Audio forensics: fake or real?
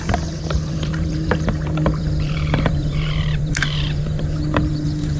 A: fake